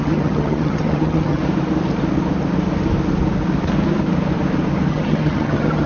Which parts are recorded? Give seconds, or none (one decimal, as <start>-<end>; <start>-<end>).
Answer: 1.4-4.9